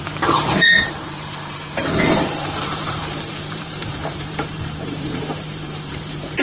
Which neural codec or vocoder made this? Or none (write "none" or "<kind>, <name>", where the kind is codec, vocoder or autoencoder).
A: vocoder, BigVGAN v2